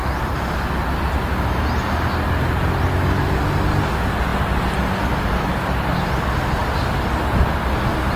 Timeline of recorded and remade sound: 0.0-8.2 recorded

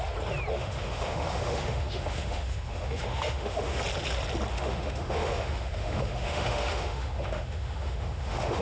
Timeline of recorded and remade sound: 0.0-0.5 recorded; 0.5-3.8 remade; 3.8-4.5 recorded; 4.5-8.6 remade

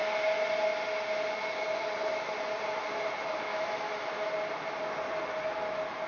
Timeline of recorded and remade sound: 0.0-3.5 recorded; 3.5-4.3 remade; 4.3-6.1 recorded

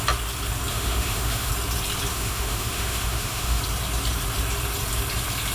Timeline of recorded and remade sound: 0.0-0.7 recorded; 0.7-1.5 remade; 1.5-2.1 recorded; 2.1-3.6 remade; 3.6-5.5 recorded

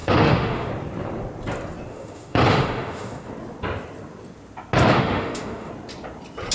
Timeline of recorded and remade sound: 0.0-0.7 remade; 0.7-1.9 recorded; 1.9-3.3 remade; 3.3-4.9 recorded; 4.9-5.7 remade; 5.7-6.5 recorded

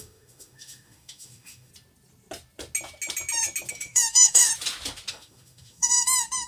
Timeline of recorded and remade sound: 0.0-1.7 remade; 1.7-3.7 recorded; 3.7-4.5 remade; 4.5-5.1 recorded; 5.1-6.5 remade

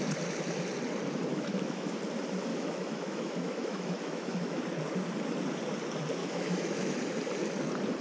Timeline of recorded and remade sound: 0.0-1.3 recorded; 1.3-2.0 remade; 2.0-2.5 recorded; 2.5-4.6 remade; 4.6-6.2 recorded; 6.2-7.0 remade; 7.0-8.0 recorded

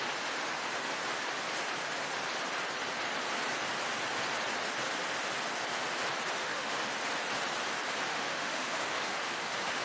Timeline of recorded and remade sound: 0.0-6.4 recorded; 6.4-6.9 remade; 6.9-8.1 recorded; 8.1-9.8 remade